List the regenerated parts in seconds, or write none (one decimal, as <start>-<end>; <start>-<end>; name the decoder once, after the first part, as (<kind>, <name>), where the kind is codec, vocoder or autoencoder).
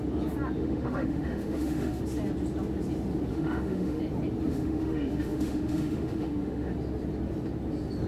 0.6-2.0 (autoencoder, DAC-VAE); 3.3-4.0; 4.5-6.7